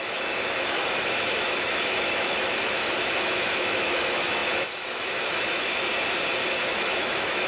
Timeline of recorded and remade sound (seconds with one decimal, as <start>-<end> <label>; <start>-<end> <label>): 0.0-5.9 remade; 5.9-6.6 recorded; 6.6-7.5 remade